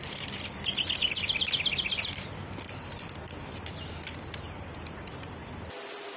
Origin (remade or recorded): recorded